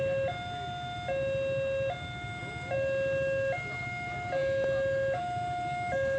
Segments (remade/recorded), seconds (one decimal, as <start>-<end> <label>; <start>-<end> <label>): 0.0-6.2 recorded